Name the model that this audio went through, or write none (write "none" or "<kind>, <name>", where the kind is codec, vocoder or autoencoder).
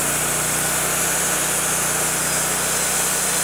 none